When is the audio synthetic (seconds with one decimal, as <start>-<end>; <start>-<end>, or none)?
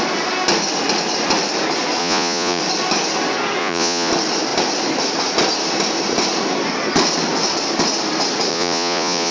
2.0-2.6; 3.6-4.1; 8.5-9.3